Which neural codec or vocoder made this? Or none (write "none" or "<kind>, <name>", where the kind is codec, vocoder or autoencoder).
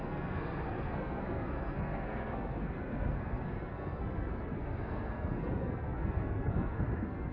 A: codec, SNAC